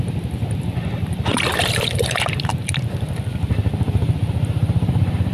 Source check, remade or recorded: remade